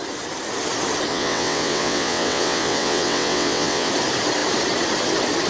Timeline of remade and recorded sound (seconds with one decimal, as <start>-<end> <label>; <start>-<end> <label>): 0.0-1.1 recorded; 1.1-3.9 remade; 3.9-5.5 recorded